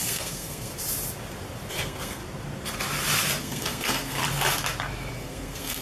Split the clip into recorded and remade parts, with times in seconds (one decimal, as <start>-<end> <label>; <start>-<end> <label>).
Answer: 0.0-0.7 remade; 0.7-1.7 recorded; 1.7-2.2 remade; 2.2-3.4 recorded; 3.4-4.2 remade; 4.2-5.1 recorded; 5.1-5.8 remade

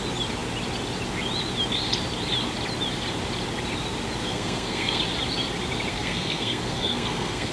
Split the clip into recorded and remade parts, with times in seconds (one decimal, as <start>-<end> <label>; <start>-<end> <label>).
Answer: 0.0-4.2 recorded; 4.2-5.0 remade; 5.0-5.9 recorded; 5.9-7.5 remade

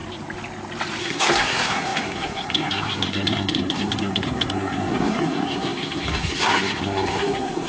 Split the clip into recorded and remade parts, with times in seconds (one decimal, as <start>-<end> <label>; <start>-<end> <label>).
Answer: 0.0-1.0 recorded; 1.0-7.7 remade

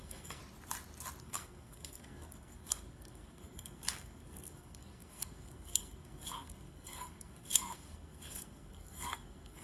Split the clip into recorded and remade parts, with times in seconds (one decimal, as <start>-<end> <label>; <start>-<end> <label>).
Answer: 0.0-0.4 remade; 0.4-1.2 recorded; 1.2-9.6 remade